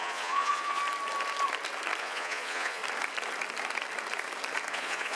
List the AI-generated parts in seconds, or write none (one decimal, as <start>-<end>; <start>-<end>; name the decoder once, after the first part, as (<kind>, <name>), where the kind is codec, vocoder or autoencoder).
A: 0.0-0.8 (vocoder, Vocos); 2.0-2.8; 4.7-5.2